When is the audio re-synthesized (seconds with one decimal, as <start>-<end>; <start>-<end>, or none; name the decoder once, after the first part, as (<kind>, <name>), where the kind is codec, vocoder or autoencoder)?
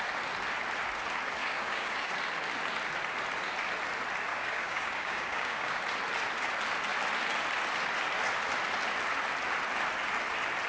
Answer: 1.4-2.1 (codec, DAC); 4.3-5.8